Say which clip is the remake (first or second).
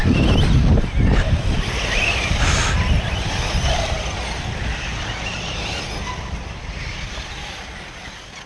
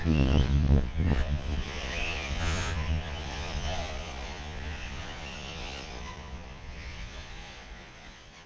second